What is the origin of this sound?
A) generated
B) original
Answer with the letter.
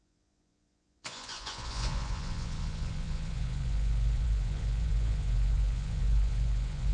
A